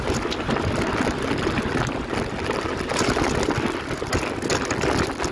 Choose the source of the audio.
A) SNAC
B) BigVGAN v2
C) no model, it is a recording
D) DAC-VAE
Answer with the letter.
C